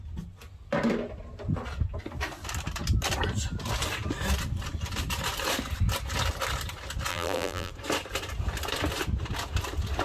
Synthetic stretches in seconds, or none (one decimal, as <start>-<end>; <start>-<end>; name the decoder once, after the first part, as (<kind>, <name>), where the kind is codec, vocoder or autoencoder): 7.1-7.7 (vocoder, BigVGAN v2)